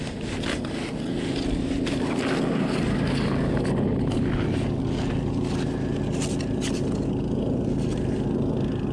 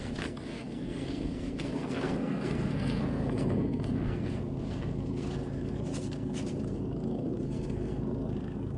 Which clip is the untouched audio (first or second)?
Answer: first